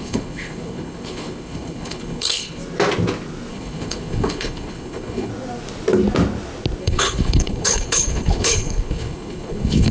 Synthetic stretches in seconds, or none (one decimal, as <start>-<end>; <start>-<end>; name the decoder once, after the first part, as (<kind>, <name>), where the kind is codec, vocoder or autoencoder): 0.0-2.6 (codec, HILCodec); 3.5-5.3; 6.8-9.9